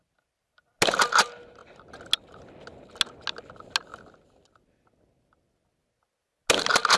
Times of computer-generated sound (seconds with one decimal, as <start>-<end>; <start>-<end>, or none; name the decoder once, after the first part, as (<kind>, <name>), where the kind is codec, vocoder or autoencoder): none